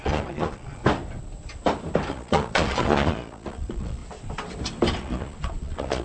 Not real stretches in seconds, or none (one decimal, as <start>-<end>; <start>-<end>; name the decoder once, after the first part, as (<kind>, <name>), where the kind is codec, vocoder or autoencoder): 0.0-0.8 (vocoder, Vocos); 2.1-4.0; 5.0-6.0